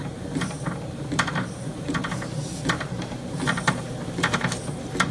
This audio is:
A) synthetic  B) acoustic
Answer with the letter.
A